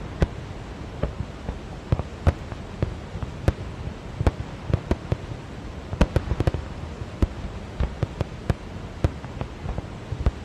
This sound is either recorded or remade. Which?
recorded